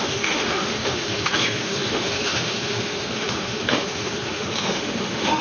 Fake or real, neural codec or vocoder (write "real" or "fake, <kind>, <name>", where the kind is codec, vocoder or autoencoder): fake, autoencoder, DAC-VAE